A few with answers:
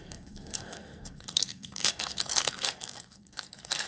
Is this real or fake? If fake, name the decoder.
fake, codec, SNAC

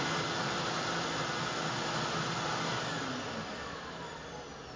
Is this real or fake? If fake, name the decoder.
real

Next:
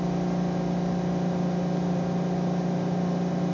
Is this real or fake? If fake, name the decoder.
real